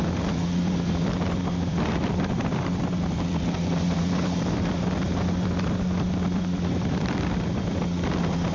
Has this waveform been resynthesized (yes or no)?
yes